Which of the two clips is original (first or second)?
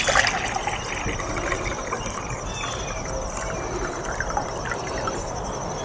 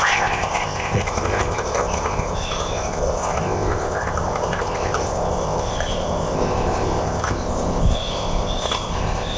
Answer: first